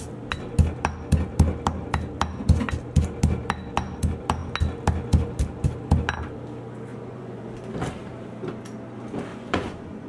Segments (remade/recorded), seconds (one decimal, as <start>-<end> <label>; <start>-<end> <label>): 0.0-6.9 recorded; 6.9-7.5 remade; 7.5-9.3 recorded; 9.3-10.1 remade